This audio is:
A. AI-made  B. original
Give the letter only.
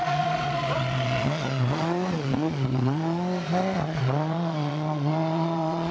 A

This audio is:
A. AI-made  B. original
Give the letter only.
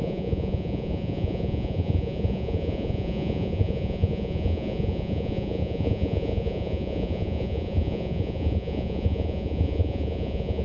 A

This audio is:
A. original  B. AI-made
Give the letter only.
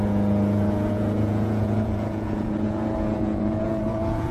B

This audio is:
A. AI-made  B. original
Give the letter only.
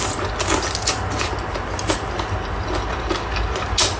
B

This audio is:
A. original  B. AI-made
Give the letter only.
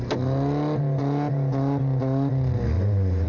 A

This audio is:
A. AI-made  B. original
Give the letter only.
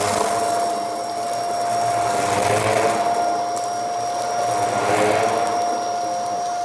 B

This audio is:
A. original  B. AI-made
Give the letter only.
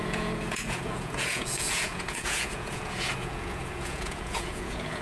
B